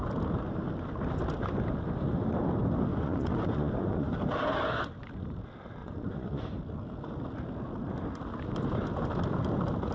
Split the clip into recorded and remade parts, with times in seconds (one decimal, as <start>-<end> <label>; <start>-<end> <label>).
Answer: 0.0-2.9 recorded; 2.9-4.1 remade; 4.1-5.8 recorded; 5.8-6.4 remade; 6.4-9.9 recorded